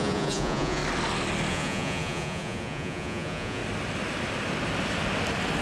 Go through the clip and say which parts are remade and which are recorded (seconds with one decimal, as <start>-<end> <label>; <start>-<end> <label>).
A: 0.0-0.8 remade; 0.8-1.5 recorded; 1.5-3.6 remade; 3.6-5.6 recorded